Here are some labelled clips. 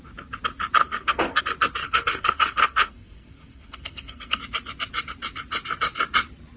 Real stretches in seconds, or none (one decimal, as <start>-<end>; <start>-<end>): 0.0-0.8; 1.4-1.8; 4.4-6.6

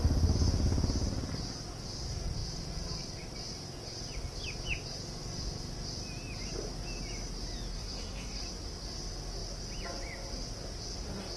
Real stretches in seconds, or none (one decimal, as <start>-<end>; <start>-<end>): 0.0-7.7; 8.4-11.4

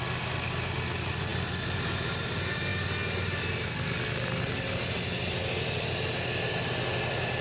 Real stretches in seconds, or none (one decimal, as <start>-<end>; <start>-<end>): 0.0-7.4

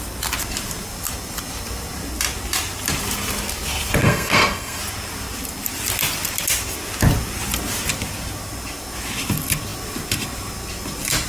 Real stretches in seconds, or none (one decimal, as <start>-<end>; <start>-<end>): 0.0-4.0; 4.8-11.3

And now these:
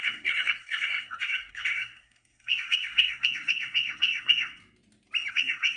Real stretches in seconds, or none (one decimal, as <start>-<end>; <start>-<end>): 4.6-5.3

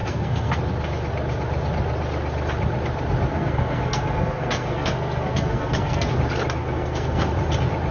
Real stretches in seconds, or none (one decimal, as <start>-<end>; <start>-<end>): 0.6-3.3; 6.1-6.6; 7.3-7.9

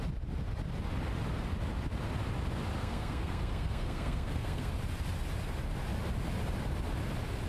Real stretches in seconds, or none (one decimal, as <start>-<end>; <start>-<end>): 0.0-2.8; 4.7-7.5